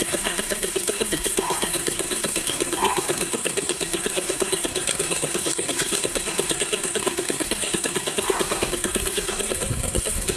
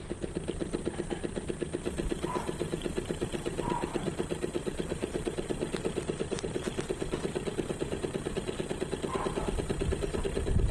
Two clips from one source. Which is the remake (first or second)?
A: first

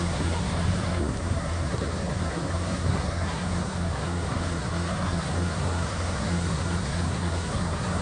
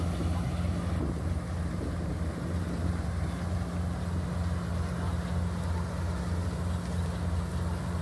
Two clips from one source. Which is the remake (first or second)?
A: first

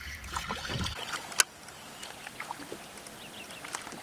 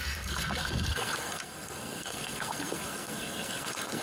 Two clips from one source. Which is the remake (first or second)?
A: second